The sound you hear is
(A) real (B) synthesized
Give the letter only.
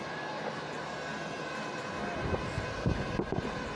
A